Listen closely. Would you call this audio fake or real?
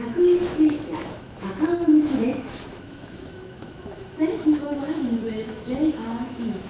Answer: fake